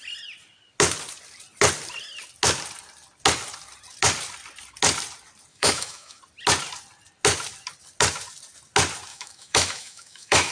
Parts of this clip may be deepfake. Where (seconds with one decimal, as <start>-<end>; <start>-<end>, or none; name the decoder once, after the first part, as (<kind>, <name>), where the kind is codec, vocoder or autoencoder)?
5.5-6.2 (autoencoder, DAC-VAE); 9.1-10.5